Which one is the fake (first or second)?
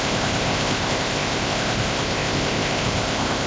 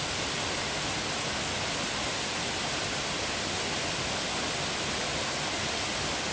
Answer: first